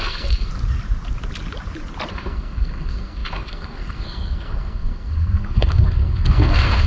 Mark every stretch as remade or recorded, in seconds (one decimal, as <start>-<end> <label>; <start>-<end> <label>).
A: 0.0-0.5 remade; 0.5-2.1 recorded; 2.1-6.9 remade